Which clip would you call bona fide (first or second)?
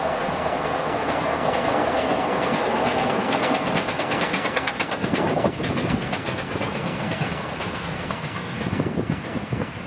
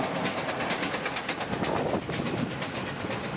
second